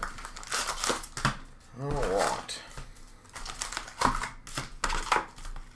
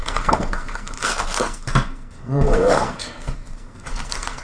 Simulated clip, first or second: second